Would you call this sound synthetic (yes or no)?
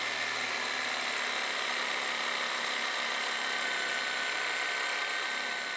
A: no